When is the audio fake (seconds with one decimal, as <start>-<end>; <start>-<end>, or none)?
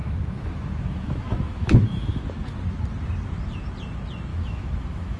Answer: 0.0-2.2; 4.3-5.2